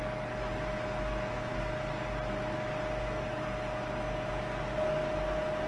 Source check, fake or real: real